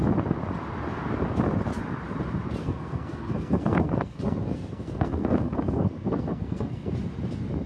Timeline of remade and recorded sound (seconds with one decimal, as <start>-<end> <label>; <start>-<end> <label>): 0.0-2.6 recorded; 2.6-6.9 remade; 6.9-7.7 recorded